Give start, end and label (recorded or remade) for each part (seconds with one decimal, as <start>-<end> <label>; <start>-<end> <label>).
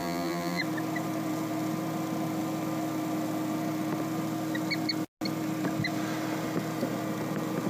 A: 0.0-0.6 remade; 0.6-7.7 recorded